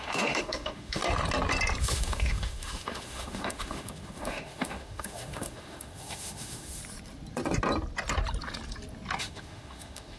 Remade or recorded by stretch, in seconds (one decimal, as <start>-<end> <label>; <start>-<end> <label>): 0.0-1.0 remade; 1.0-1.8 recorded; 1.8-6.8 remade; 6.8-9.2 recorded; 9.2-10.2 remade